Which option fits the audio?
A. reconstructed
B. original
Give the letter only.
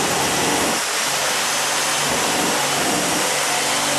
B